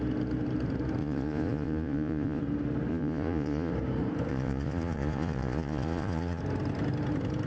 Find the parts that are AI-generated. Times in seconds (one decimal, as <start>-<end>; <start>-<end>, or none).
1.0-2.4; 2.9-3.7; 4.3-6.4